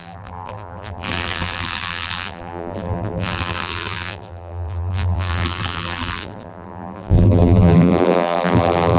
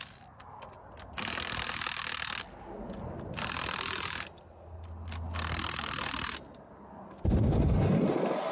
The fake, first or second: first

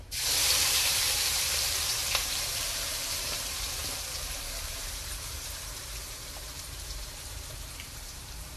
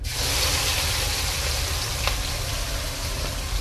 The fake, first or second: first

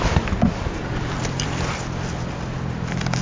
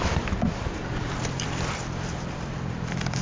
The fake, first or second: second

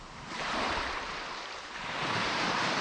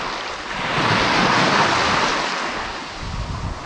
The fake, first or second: first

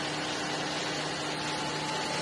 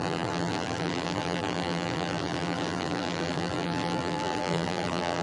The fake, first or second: second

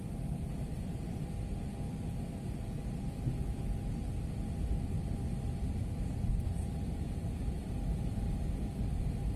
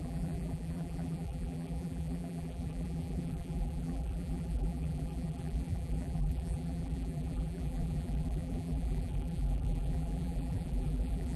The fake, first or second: second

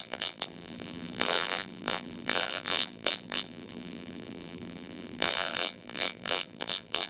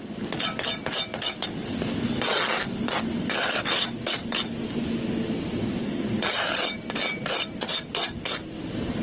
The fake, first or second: first